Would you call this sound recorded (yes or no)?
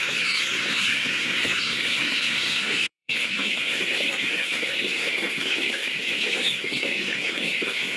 no